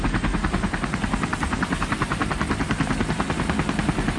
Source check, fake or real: real